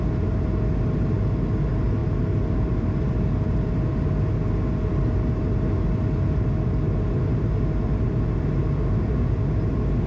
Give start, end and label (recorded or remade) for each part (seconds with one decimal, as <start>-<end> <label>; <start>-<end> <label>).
0.0-10.1 recorded

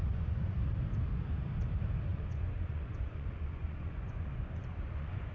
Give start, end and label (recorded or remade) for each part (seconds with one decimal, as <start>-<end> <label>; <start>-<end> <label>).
0.0-0.6 remade; 0.6-2.1 recorded; 2.1-5.3 remade

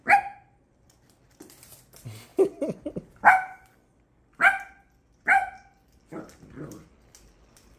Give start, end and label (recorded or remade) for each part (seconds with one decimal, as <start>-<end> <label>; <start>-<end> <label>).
0.0-2.3 recorded; 2.3-6.4 remade; 6.4-7.8 recorded

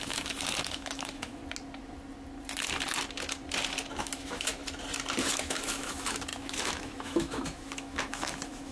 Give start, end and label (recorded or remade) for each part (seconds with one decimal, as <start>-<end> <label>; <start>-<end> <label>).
0.0-1.4 remade; 1.4-4.0 recorded; 4.0-4.6 remade; 4.6-5.3 recorded; 5.3-8.7 remade

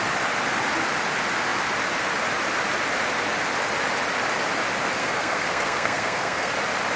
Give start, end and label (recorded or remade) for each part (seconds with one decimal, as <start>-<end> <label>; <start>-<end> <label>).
0.0-5.0 recorded; 5.0-6.5 remade; 6.5-7.0 recorded

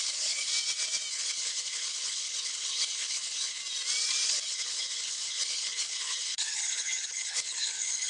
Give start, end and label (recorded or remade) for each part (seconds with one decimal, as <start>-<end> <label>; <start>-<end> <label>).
0.0-0.5 remade; 0.5-1.1 recorded; 1.1-3.6 remade; 3.6-4.3 recorded; 4.3-8.1 remade

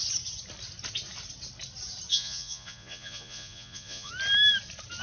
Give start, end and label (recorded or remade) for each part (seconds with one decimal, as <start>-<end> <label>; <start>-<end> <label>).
0.0-2.1 recorded; 2.1-4.1 remade; 4.1-5.0 recorded

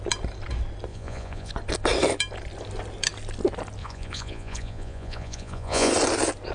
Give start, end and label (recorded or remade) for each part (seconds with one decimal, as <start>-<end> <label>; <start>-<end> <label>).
0.0-0.9 recorded; 0.9-1.5 remade; 1.5-3.8 recorded; 3.8-5.9 remade; 5.9-6.5 recorded